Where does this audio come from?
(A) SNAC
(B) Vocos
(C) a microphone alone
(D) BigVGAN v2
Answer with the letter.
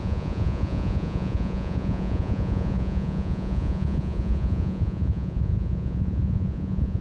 B